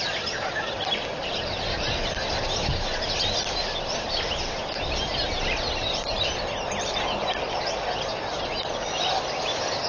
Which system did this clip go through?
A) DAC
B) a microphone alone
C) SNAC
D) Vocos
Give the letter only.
B